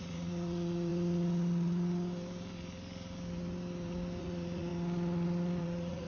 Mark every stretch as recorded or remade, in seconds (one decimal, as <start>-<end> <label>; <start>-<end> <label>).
0.0-0.9 remade; 0.9-4.2 recorded; 4.2-4.7 remade; 4.7-5.6 recorded; 5.6-6.1 remade